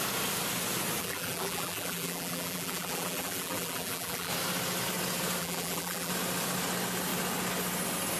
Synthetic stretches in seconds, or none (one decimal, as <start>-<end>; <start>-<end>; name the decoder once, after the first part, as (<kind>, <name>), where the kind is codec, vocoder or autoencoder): 1.0-4.3 (vocoder, BigVGAN v2); 5.4-6.1

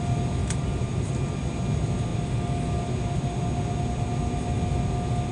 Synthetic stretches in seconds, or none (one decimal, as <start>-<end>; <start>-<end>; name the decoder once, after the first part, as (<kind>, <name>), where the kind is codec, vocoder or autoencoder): 0.4-1.1 (vocoder, BigVGAN v2)

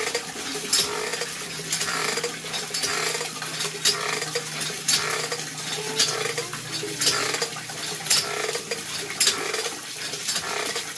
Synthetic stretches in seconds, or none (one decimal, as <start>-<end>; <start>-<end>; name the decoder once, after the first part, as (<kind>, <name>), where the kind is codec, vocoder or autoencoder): 1.1-2.2 (vocoder, BigVGAN v2)